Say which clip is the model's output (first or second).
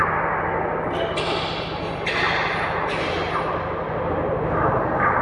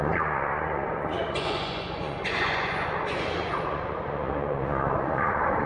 second